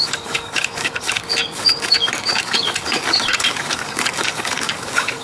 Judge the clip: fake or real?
fake